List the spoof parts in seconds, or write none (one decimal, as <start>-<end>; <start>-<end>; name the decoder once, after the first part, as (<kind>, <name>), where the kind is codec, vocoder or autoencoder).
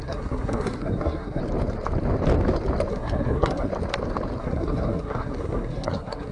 0.0-1.4 (codec, SNAC); 2.9-3.7; 4.4-6.3